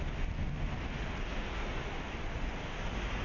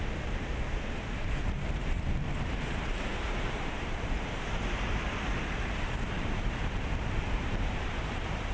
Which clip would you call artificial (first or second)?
second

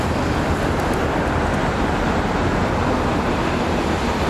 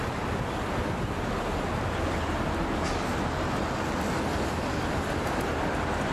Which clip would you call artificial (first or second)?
first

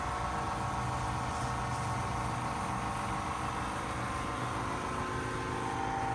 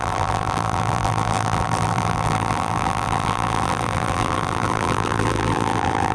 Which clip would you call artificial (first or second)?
second